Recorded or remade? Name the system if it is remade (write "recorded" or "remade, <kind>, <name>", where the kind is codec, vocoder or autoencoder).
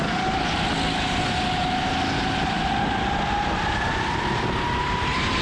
recorded